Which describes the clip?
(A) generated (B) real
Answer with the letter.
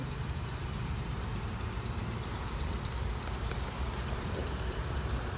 A